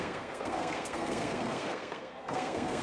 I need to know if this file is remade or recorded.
remade